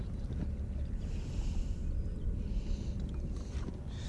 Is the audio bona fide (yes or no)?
yes